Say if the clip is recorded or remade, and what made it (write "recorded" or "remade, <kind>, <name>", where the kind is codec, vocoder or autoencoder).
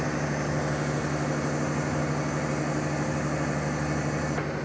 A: recorded